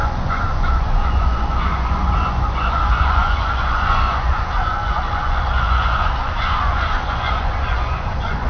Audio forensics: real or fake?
fake